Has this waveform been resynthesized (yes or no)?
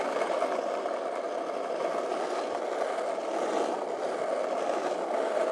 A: no